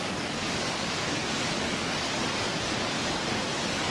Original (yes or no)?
no